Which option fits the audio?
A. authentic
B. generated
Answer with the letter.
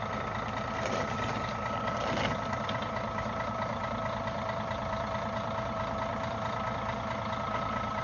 A